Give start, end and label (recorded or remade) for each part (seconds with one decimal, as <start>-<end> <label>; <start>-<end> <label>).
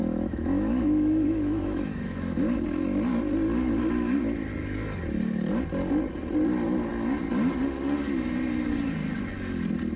0.0-2.4 remade; 2.4-10.0 recorded